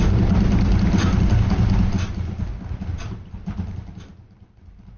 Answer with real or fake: real